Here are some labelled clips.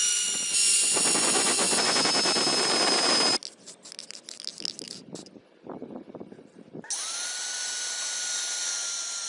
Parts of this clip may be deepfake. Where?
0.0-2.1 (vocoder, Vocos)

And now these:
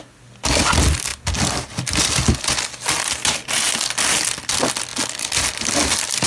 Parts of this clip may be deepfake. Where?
none